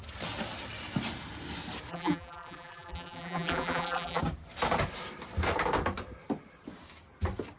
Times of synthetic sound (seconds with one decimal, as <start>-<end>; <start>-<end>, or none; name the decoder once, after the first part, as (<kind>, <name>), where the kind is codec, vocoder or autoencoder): 1.9-4.2 (vocoder, BigVGAN v2)